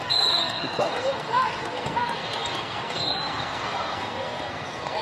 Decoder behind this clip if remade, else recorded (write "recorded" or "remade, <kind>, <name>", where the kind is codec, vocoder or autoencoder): remade, codec, SNAC